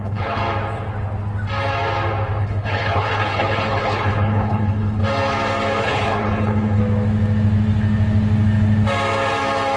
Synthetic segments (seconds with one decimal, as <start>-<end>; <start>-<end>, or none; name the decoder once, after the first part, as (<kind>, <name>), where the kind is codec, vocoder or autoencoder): 0.0-0.4 (codec, HILCodec); 2.4-5.0; 5.8-6.8